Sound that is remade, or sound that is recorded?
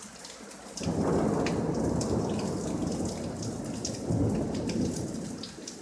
recorded